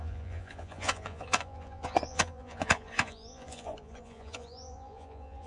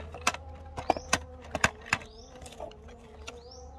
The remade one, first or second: first